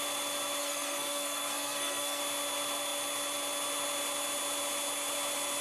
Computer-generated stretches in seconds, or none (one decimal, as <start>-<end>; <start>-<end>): 0.6-2.2